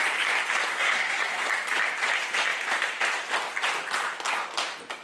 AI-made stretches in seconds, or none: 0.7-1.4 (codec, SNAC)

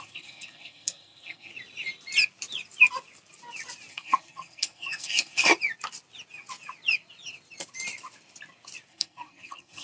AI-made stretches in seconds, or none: 0.0-1.5 (codec, SNAC); 3.9-5.5; 8.9-9.8